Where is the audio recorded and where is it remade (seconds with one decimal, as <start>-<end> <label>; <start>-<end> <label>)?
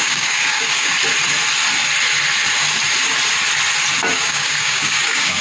0.0-0.9 remade; 0.9-4.1 recorded; 4.1-5.4 remade